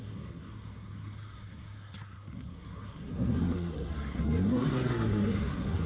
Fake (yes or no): yes